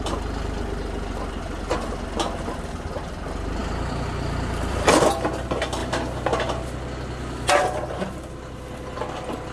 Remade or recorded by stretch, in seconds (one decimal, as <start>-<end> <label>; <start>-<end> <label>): 0.0-3.6 recorded; 3.6-4.9 remade; 4.9-9.5 recorded